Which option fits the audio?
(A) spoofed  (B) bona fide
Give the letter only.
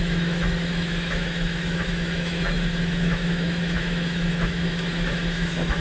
A